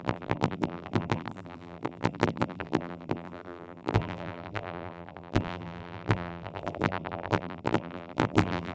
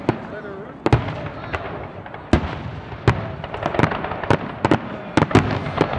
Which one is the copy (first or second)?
first